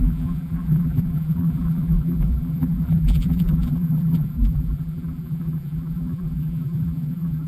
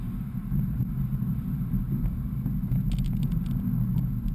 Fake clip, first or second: first